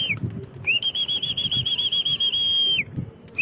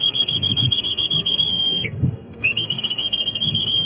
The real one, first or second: first